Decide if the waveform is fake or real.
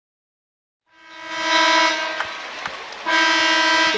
real